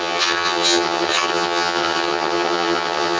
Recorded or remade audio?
remade